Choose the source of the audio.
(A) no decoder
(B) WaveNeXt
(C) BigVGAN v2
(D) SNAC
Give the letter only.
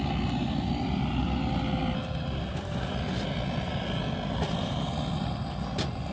A